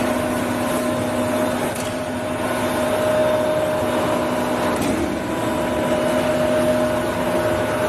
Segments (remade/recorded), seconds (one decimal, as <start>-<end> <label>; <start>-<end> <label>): 0.0-7.9 recorded